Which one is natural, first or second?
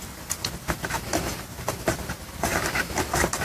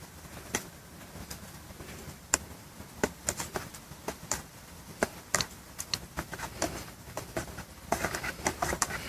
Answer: first